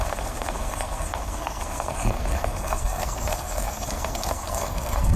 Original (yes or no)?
no